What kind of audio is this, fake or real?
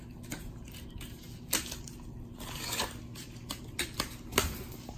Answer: real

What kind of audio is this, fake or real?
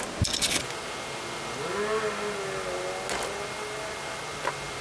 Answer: real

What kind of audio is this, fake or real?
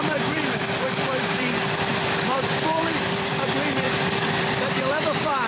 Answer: fake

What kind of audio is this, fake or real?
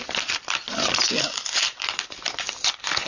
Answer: fake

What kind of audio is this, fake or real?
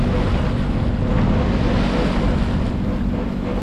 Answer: real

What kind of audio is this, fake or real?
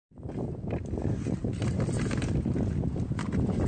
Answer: real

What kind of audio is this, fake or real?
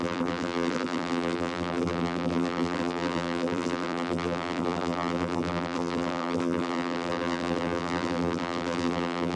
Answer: fake